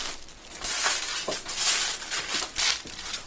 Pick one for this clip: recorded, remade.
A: recorded